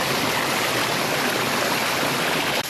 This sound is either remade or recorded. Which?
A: recorded